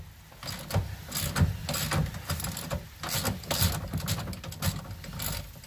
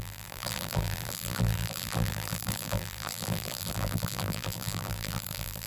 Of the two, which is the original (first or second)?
first